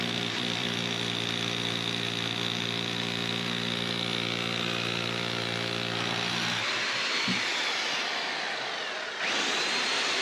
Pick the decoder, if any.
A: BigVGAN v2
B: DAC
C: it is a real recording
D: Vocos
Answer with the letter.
C